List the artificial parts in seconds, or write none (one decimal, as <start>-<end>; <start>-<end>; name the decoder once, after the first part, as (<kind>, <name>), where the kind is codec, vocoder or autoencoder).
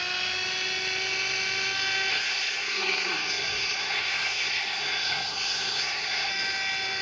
2.1-6.3 (codec, SNAC)